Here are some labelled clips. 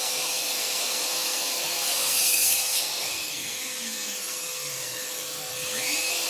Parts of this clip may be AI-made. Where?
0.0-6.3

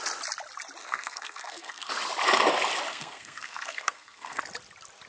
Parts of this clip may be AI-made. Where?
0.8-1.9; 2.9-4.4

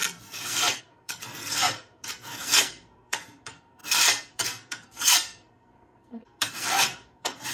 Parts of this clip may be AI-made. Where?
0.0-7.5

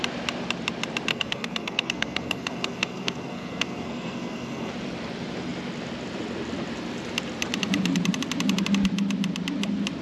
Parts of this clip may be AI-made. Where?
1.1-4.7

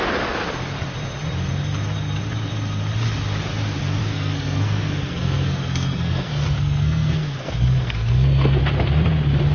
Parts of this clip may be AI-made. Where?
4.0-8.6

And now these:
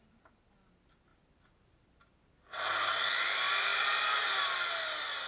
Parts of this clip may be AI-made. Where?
none

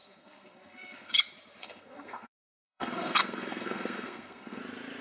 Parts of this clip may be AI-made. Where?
0.0-1.2; 1.6-4.6